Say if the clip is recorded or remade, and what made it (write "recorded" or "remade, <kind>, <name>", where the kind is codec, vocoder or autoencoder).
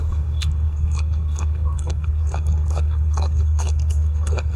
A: remade, codec, SNAC